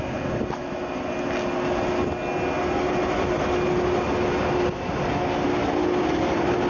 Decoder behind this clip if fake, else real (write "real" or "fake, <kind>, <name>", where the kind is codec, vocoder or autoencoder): real